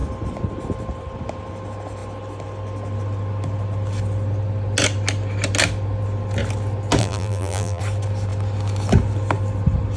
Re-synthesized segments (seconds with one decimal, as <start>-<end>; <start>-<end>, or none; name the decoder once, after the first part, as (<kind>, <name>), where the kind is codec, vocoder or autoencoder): 7.0-7.8 (vocoder, BigVGAN v2)